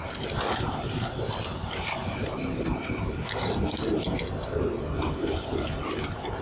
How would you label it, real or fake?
real